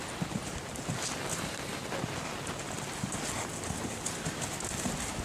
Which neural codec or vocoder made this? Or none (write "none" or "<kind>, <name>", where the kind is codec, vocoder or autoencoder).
none